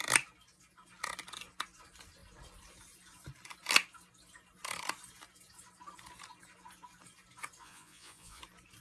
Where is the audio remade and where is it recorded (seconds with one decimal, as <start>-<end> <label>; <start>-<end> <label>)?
0.0-7.6 recorded; 7.6-8.4 remade; 8.4-8.8 recorded